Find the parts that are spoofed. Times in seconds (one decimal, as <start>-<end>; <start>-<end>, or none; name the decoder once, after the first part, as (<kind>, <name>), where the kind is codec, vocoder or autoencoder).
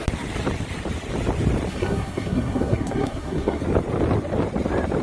1.7-3.6 (codec, SNAC)